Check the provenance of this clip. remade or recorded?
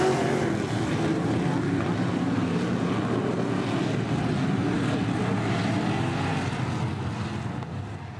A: recorded